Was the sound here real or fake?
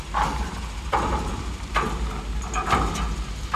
real